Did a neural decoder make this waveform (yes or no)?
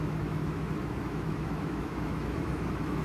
yes